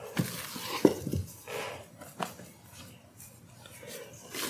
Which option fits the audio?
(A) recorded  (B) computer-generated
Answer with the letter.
A